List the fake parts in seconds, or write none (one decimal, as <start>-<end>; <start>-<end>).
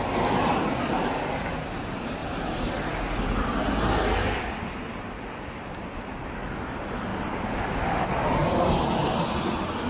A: none